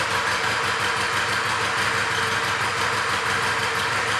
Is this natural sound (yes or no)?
no